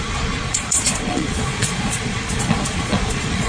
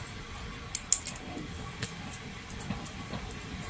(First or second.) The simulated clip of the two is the first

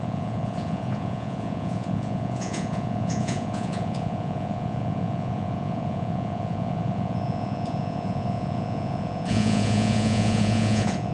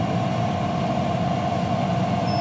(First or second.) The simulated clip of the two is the first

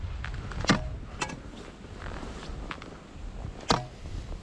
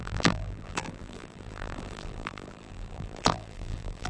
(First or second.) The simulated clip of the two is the second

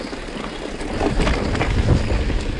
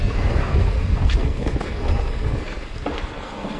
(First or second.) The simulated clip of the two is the second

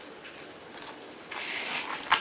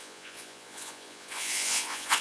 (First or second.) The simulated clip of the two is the second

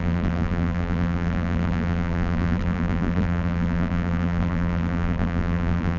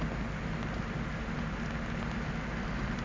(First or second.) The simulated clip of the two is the first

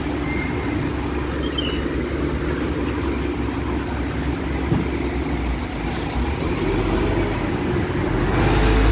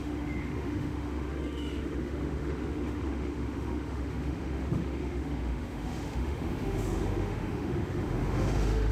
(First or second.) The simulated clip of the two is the second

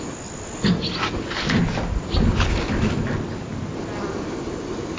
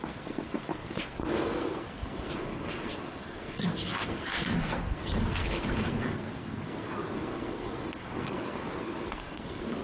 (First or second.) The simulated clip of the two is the second